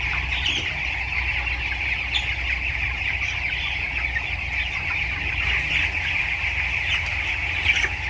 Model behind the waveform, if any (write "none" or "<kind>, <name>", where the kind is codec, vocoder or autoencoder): none